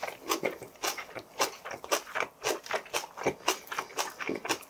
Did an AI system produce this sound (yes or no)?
no